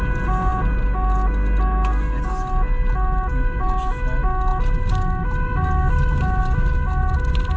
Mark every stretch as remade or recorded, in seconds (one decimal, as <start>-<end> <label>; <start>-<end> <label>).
0.0-7.6 recorded